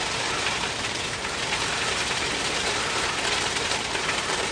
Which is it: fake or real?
real